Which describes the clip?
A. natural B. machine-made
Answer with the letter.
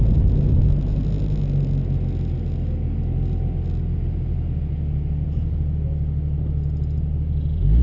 A